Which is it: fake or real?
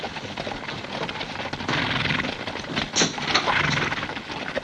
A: real